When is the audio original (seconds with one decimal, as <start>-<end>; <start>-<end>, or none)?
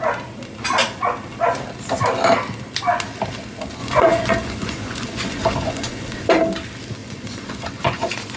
0.0-3.8; 6.3-7.0